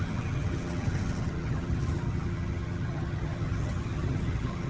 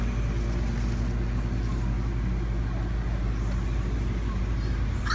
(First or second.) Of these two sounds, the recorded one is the second